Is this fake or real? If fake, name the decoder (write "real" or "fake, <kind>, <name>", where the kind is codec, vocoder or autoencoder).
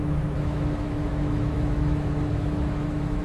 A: fake, autoencoder, DAC-VAE